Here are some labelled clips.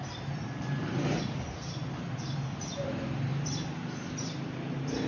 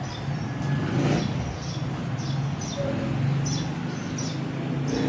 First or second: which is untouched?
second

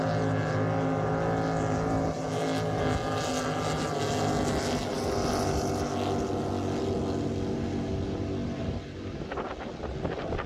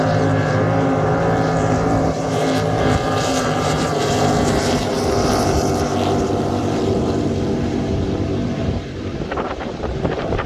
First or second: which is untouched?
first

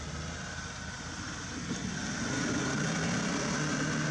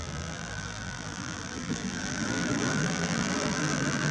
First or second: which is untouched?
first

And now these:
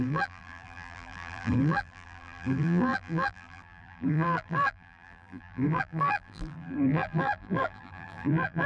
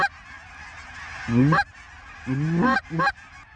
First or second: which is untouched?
second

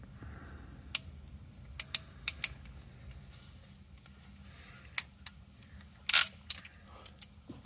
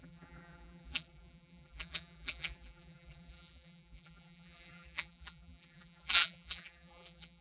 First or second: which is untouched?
first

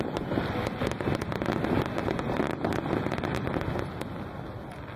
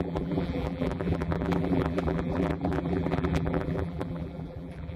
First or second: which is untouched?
first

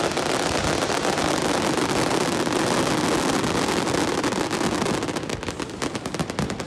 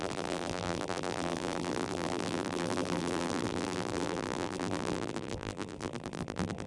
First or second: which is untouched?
first